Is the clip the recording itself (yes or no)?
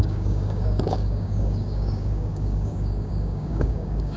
no